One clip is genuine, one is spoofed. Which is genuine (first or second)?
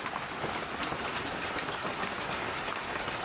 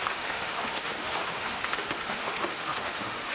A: first